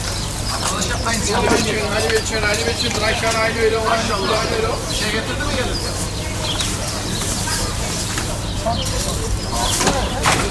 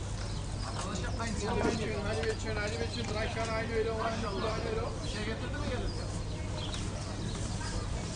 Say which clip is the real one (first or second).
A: second